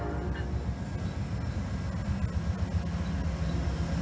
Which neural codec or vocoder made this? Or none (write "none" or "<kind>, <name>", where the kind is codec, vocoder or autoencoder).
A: none